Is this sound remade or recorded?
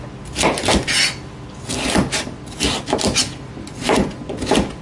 recorded